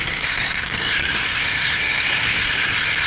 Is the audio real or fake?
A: fake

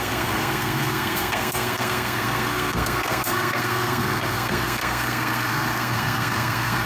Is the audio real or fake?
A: fake